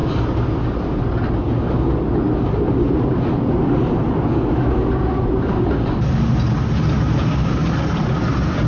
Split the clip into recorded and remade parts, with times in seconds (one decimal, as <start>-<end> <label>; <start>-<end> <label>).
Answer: 0.0-8.7 recorded